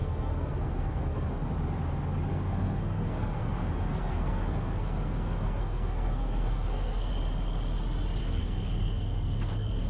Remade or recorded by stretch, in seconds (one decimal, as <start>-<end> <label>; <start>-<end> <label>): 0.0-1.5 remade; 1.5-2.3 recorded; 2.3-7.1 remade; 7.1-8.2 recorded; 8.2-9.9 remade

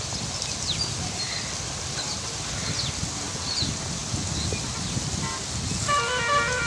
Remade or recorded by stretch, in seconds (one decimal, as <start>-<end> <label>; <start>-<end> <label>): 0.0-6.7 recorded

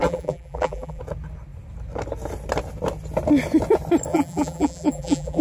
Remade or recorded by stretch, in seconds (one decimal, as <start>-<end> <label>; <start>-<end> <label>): 0.0-1.0 remade; 1.0-4.1 recorded; 4.1-5.4 remade

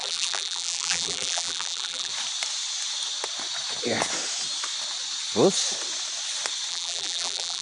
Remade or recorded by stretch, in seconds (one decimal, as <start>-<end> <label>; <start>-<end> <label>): 0.0-2.1 remade; 2.1-6.7 recorded; 6.7-7.6 remade